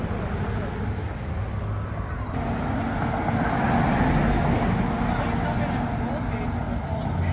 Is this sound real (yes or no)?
yes